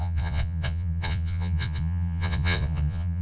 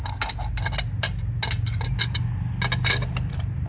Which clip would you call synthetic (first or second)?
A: first